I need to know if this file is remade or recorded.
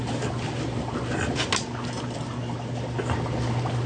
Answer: recorded